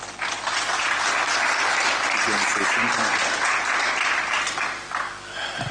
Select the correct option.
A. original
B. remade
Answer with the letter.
A